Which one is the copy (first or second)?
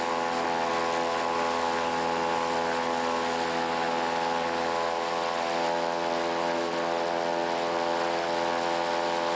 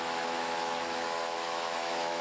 second